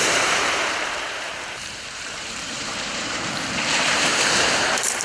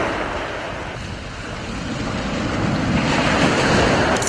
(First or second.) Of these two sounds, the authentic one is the second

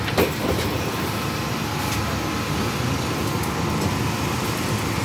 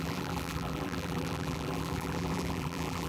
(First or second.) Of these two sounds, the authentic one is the first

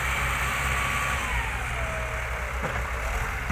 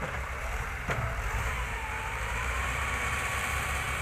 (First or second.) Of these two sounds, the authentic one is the first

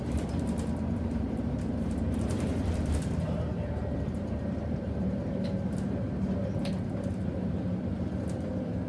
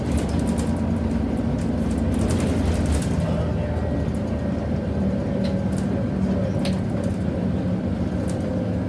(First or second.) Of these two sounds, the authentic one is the second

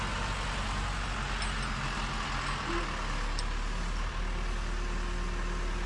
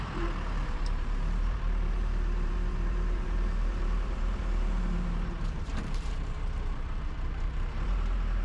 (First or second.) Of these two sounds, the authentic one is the first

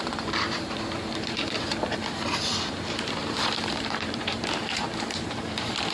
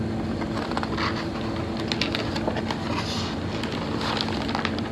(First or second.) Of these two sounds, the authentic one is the second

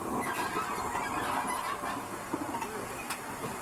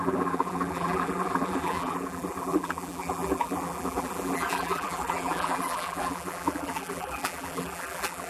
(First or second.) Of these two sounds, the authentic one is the first